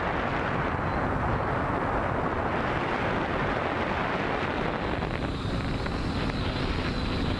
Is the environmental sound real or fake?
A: real